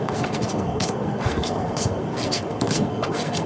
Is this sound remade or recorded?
remade